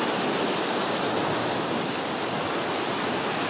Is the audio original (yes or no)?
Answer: yes